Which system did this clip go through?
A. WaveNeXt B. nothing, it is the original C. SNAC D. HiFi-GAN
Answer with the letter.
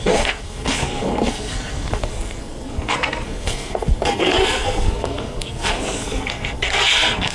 C